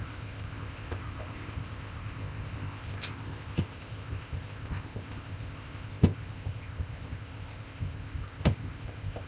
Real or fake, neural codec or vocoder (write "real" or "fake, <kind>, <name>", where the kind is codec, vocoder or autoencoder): fake, codec, ZipCodec